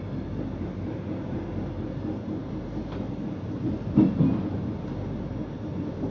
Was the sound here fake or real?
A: real